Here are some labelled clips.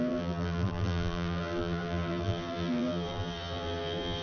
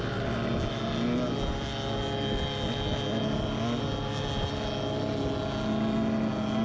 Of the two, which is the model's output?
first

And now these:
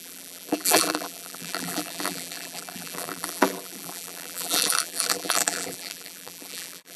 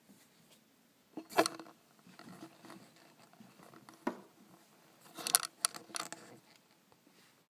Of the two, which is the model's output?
first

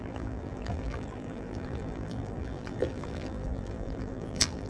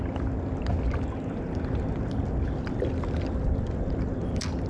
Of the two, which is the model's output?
first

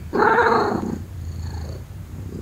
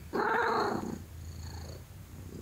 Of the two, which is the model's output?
first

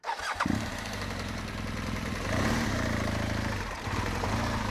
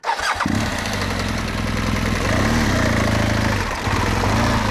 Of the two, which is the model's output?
first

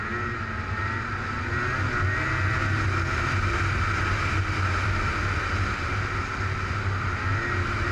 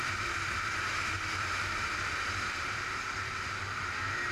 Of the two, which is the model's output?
second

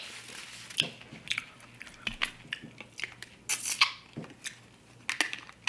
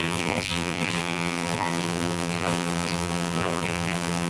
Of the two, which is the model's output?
second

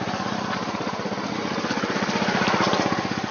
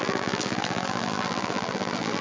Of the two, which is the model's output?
second